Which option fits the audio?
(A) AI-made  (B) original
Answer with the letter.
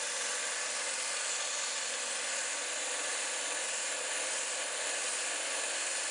B